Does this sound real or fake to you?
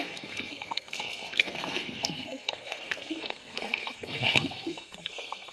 fake